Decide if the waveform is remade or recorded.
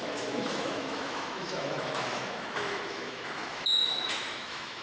remade